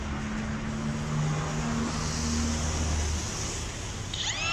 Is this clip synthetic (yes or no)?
no